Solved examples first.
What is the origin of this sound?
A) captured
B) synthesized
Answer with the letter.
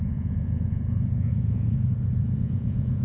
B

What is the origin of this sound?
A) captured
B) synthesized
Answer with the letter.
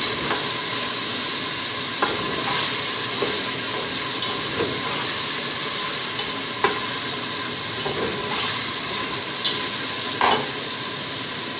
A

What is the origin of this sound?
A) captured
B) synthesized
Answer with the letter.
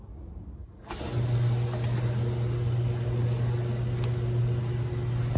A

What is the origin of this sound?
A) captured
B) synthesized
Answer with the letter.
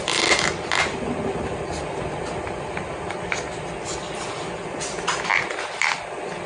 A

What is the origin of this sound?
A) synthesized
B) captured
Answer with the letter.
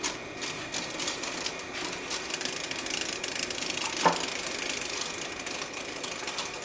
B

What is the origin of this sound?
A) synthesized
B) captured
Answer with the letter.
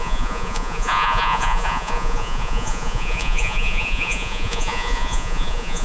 A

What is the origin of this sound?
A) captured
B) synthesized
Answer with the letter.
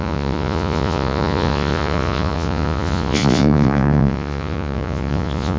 B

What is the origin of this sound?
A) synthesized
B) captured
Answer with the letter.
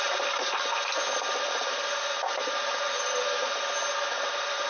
B